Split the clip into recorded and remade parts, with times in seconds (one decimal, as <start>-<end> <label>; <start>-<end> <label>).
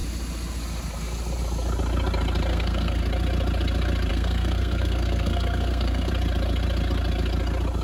0.0-2.5 recorded; 2.5-3.0 remade; 3.0-4.1 recorded; 4.1-6.1 remade; 6.1-7.8 recorded